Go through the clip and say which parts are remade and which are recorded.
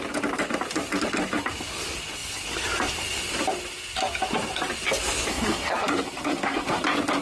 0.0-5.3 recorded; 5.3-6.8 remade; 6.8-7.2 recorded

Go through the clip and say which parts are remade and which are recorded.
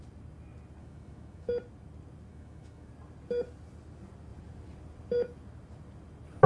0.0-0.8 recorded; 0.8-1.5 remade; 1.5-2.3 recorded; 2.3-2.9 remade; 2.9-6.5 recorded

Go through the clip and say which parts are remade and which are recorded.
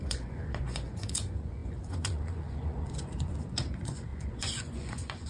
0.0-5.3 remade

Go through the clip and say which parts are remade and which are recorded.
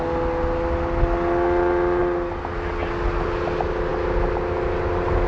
0.0-5.3 recorded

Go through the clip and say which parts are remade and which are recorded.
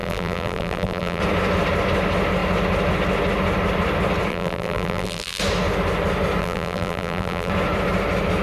0.0-1.2 remade; 1.2-4.3 recorded; 4.3-5.4 remade; 5.4-6.4 recorded; 6.4-7.5 remade; 7.5-8.4 recorded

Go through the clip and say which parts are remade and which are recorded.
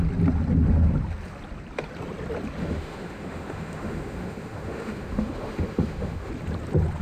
0.0-2.6 recorded; 2.6-6.3 remade; 6.3-7.0 recorded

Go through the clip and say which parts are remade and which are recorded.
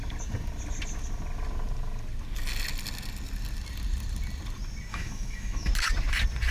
0.0-4.9 recorded; 4.9-5.7 remade; 5.7-6.5 recorded